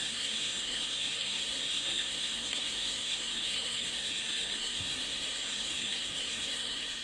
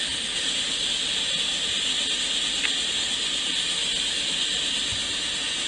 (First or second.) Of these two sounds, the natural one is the second